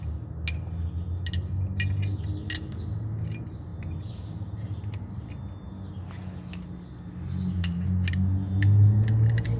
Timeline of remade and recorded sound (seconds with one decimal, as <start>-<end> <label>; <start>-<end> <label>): 0.0-9.6 recorded